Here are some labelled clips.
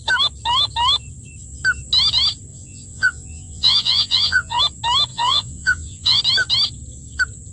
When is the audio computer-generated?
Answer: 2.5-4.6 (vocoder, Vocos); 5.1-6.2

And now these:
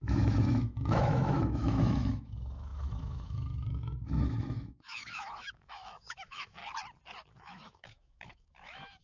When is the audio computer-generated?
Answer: 0.0-6.6 (autoencoder, DAC-VAE); 7.3-9.0

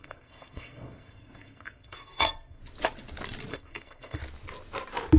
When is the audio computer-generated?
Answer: 0.0-2.6 (codec, SNAC); 3.5-4.2

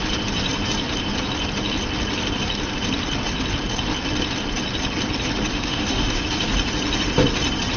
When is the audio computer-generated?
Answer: 5.5-6.2 (autoencoder, DAC-VAE)

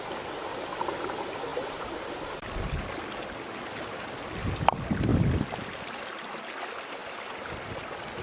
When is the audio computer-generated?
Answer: 1.5-2.3 (vocoder, BigVGAN v2); 5.1-5.9; 7.0-7.6

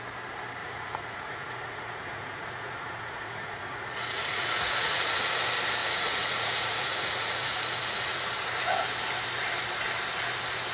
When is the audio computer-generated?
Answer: 0.6-5.3 (vocoder, Vocos); 5.8-8.2

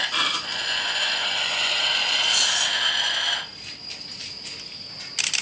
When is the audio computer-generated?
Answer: 0.5-2.2 (vocoder, Vocos)

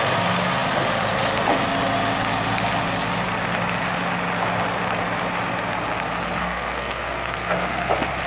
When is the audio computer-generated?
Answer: 6.4-7.9 (codec, SNAC)